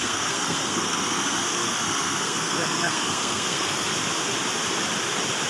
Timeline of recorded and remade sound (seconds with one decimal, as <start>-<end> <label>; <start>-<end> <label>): 0.0-3.9 remade; 3.9-5.5 recorded